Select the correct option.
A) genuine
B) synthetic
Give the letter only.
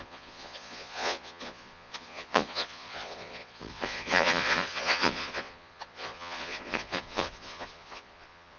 B